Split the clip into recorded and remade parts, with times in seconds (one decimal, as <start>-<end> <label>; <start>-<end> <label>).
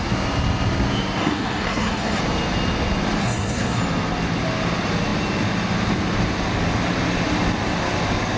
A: 0.0-1.2 recorded; 1.2-2.2 remade; 2.2-3.2 recorded; 3.2-3.8 remade; 3.8-8.4 recorded